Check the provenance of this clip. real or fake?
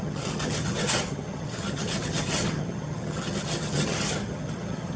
fake